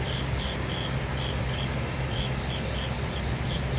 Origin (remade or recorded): recorded